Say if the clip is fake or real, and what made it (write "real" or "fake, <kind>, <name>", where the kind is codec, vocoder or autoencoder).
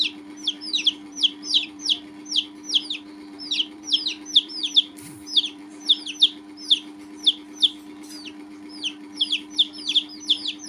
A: fake, vocoder, BigVGAN v2